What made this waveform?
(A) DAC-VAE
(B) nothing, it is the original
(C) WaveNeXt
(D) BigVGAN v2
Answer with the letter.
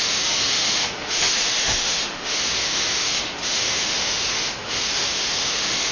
A